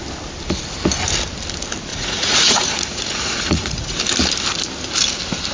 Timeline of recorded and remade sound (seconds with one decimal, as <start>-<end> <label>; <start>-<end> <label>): 0.0-1.9 recorded; 1.9-4.0 remade; 4.0-5.5 recorded